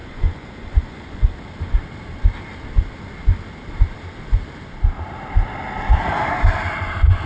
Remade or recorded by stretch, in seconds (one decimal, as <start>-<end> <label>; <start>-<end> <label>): 0.0-1.2 remade; 1.2-7.3 recorded